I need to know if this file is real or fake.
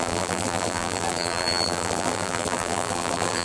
fake